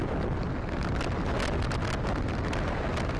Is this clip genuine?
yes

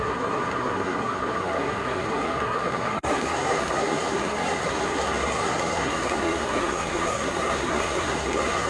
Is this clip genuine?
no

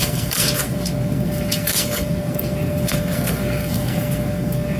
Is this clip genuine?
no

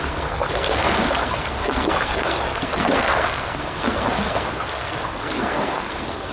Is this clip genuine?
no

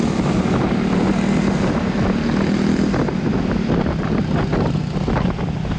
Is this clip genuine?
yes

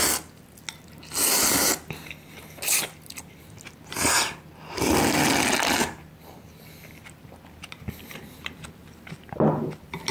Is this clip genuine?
yes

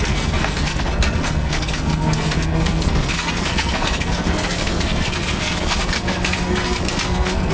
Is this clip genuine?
no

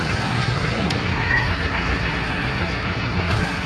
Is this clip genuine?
no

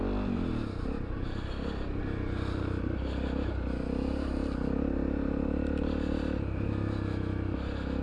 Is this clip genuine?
yes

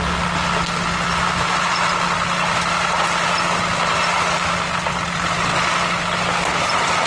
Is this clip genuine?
yes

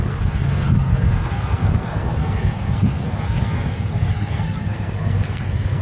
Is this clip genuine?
no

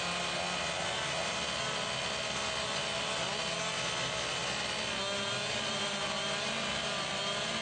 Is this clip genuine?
yes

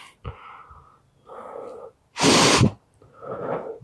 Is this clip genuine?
yes